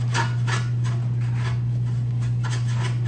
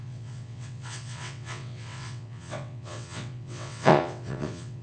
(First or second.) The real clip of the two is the first